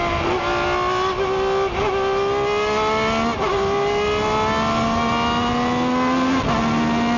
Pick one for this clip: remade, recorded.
recorded